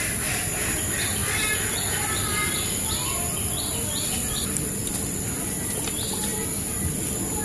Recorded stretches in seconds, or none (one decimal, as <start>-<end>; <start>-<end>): 0.0-1.2; 2.9-4.8; 5.6-6.3